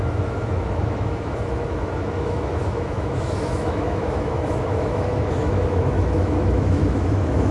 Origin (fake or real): fake